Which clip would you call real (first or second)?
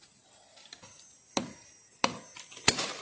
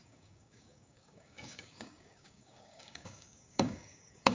first